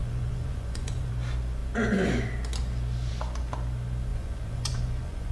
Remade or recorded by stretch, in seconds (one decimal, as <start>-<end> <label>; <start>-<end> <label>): 0.0-1.1 remade; 1.1-4.1 recorded; 4.1-5.3 remade